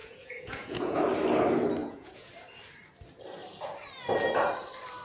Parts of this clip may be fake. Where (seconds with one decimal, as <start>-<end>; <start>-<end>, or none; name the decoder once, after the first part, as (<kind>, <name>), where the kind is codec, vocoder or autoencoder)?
0.0-1.0 (vocoder, Vocos); 1.8-2.3